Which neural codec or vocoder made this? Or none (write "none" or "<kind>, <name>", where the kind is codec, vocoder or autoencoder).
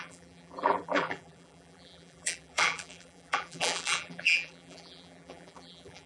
vocoder, BigVGAN v2